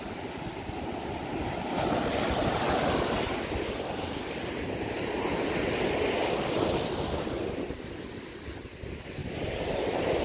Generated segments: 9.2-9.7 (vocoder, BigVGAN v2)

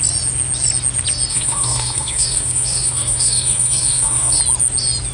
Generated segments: 1.3-4.4 (codec, SNAC)

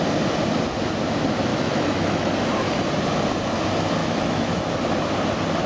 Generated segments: 1.5-2.3 (autoencoder, DAC-VAE); 4.0-4.7

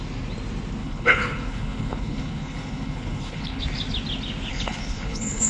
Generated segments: 0.8-3.6 (codec, HILCodec); 4.5-5.5